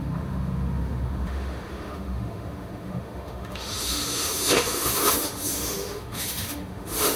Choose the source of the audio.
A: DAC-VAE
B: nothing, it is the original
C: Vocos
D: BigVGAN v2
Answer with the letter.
A